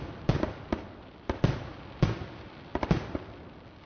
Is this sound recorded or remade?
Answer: recorded